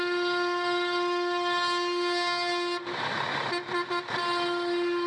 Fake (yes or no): no